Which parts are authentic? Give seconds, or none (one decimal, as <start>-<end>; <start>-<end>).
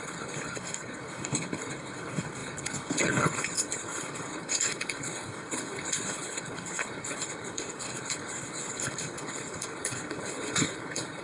none